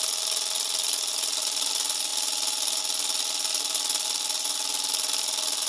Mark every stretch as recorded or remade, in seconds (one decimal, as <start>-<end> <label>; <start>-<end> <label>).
0.0-5.7 recorded